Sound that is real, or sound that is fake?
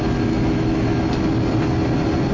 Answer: real